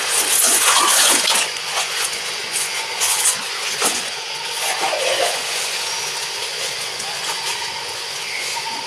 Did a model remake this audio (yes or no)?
yes